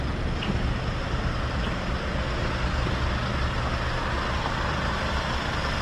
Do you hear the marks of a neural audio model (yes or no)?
no